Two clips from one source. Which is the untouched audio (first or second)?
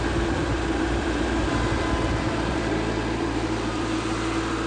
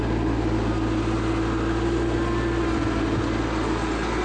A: second